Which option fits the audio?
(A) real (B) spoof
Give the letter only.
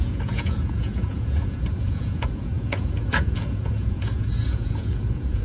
B